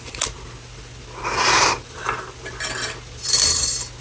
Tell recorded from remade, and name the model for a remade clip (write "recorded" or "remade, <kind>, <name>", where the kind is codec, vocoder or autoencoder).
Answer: recorded